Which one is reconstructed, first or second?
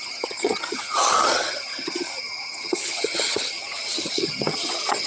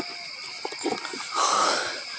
first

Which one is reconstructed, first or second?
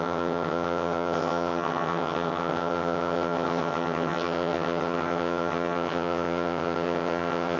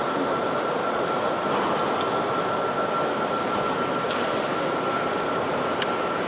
first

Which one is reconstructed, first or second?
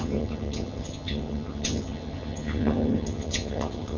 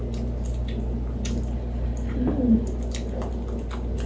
first